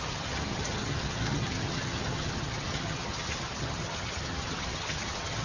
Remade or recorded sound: remade